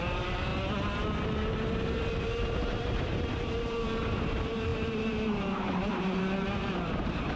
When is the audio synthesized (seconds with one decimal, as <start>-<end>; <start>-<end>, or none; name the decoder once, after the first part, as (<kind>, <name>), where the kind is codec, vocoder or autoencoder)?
0.0-0.5 (vocoder, BigVGAN v2); 1.7-7.4